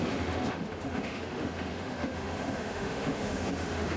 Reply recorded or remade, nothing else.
remade